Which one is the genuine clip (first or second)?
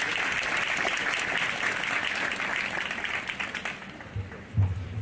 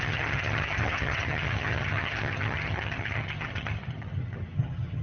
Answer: first